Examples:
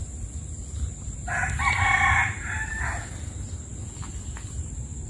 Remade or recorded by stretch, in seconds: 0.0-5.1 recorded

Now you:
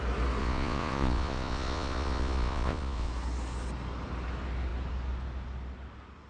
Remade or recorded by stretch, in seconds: 0.0-0.4 recorded; 0.4-3.1 remade; 3.1-6.3 recorded

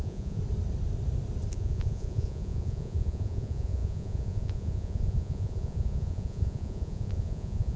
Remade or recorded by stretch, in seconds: 0.0-0.4 remade; 0.4-1.5 recorded; 1.5-7.8 remade

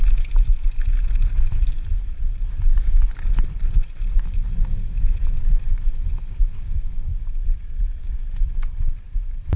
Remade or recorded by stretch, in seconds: 0.0-9.6 recorded

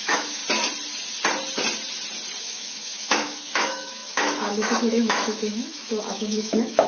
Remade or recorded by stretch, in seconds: 0.0-0.4 remade; 0.4-2.4 recorded; 2.4-6.9 remade

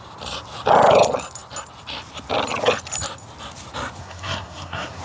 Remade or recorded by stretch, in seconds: 0.0-4.0 recorded; 4.0-5.0 remade

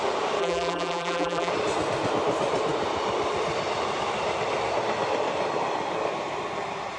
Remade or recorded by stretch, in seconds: 0.0-0.4 recorded; 0.4-1.5 remade; 1.5-7.0 recorded

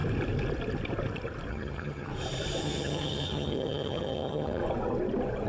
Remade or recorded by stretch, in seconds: 0.0-1.5 recorded; 1.5-2.1 remade; 2.1-2.6 recorded; 2.6-4.6 remade; 4.6-5.5 recorded